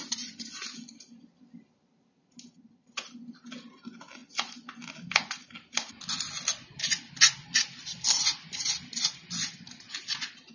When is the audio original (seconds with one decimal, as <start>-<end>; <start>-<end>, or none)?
0.0-10.5